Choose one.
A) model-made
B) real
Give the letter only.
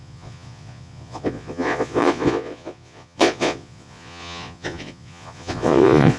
A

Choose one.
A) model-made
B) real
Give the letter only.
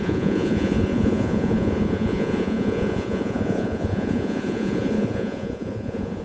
A